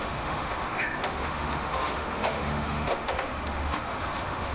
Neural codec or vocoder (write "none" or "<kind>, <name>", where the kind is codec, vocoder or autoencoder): autoencoder, DAC-VAE